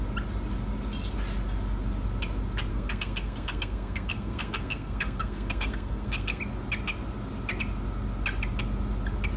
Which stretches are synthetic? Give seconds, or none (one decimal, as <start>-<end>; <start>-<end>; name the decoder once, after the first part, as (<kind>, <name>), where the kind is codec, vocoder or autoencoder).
2.7-6.4 (codec, SNAC)